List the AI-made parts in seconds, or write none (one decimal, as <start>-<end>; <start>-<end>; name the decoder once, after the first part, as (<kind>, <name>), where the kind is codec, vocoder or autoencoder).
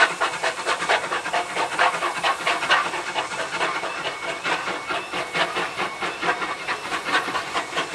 6.9-7.9 (vocoder, Vocos)